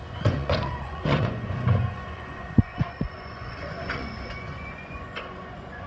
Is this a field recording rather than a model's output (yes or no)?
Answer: no